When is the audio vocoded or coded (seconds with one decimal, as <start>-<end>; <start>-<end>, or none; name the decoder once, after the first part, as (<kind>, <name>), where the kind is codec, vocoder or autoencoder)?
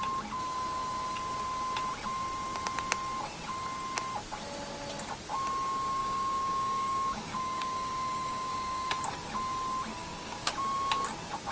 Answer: 6.0-8.9 (codec, DAC); 10.0-10.5